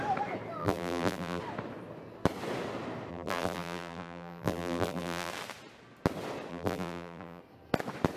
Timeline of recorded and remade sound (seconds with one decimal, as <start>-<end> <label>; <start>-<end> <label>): 0.0-0.6 recorded; 0.6-1.4 remade; 1.4-3.1 recorded; 3.1-5.3 remade; 5.3-6.5 recorded; 6.5-7.4 remade; 7.4-8.2 recorded